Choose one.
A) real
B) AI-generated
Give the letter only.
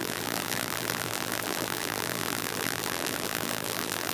B